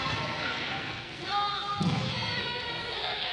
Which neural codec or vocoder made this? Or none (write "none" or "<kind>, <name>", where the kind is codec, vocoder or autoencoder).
codec, SNAC